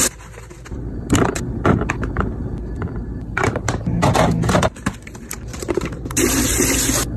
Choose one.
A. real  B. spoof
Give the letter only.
B